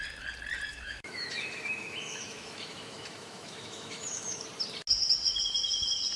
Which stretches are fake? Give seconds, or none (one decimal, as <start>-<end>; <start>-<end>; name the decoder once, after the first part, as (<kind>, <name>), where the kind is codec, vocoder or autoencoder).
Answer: 0.7-4.4 (autoencoder, DAC-VAE)